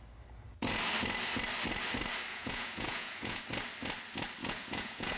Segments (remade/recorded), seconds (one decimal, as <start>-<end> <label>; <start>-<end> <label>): 0.0-2.3 recorded; 2.3-3.4 remade; 3.4-4.4 recorded; 4.4-5.2 remade